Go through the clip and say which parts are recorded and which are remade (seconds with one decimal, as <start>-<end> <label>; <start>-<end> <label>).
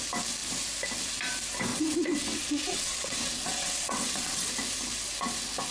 0.0-1.7 recorded; 1.7-4.5 remade; 4.5-5.7 recorded